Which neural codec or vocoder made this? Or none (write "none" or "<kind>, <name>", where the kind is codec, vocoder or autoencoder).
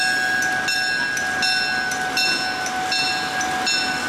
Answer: none